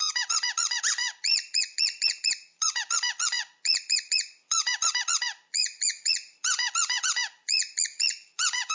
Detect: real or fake fake